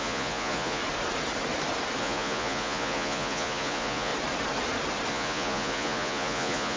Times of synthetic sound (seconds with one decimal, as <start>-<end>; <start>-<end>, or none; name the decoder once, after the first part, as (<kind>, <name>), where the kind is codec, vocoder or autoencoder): 0.0-0.8 (vocoder, Vocos); 2.0-4.1; 5.1-6.8